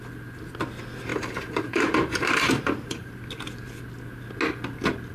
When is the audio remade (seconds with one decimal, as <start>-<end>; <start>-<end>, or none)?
1.1-3.1